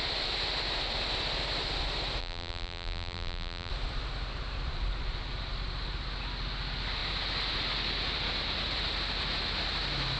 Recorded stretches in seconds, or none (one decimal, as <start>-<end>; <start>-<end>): 0.0-2.2; 3.7-10.2